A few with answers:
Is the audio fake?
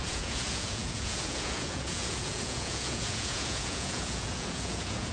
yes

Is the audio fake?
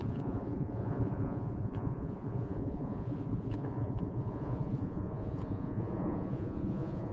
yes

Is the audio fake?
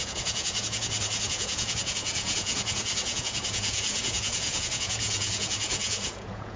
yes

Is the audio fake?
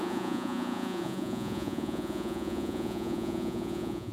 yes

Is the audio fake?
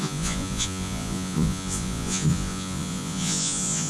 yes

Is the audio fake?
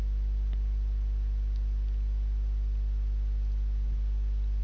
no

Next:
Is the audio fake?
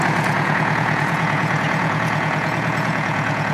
yes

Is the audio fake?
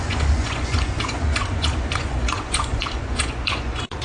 yes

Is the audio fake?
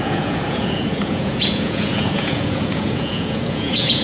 yes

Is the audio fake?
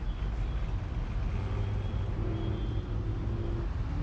no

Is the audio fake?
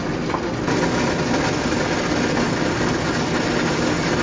no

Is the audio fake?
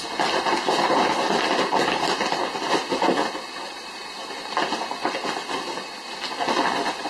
no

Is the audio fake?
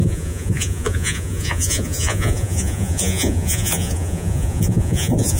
yes